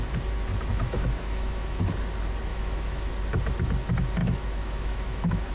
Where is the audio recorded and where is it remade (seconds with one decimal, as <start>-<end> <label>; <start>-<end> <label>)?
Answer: 0.0-0.7 recorded; 0.7-1.8 remade; 1.8-2.5 recorded; 2.5-3.1 remade; 3.1-4.2 recorded; 4.2-5.5 remade

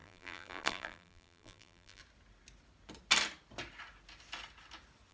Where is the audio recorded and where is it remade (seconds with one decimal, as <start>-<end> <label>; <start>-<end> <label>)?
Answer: 0.0-2.0 remade; 2.0-5.1 recorded